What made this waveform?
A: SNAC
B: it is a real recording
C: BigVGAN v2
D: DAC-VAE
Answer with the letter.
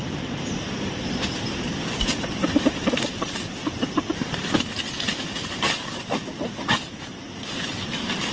C